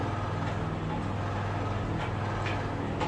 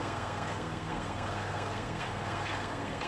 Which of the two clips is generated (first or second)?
second